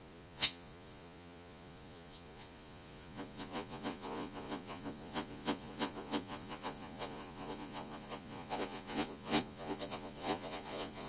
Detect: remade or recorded remade